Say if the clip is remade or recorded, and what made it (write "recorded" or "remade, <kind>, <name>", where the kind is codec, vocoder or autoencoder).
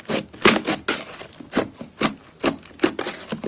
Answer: recorded